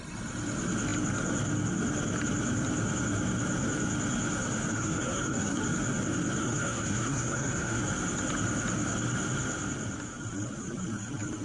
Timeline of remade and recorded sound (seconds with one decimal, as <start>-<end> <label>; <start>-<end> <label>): 0.0-4.7 recorded; 4.7-5.6 remade; 5.6-6.4 recorded; 6.4-7.8 remade; 7.8-11.4 recorded